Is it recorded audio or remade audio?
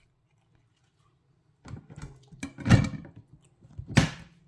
recorded